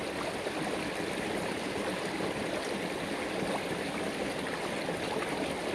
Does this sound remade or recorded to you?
recorded